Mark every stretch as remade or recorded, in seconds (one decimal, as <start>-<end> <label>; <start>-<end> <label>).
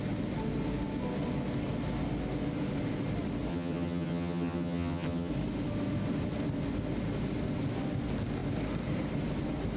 0.0-3.5 recorded; 3.5-5.3 remade; 5.3-9.8 recorded